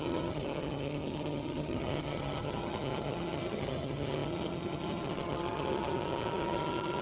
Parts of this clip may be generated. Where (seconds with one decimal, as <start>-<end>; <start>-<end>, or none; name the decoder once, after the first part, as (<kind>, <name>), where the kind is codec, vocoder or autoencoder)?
0.0-7.0 (vocoder, HiFi-GAN)